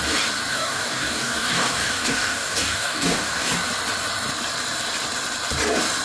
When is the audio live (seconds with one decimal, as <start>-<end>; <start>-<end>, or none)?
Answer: 0.0-0.5; 3.5-6.0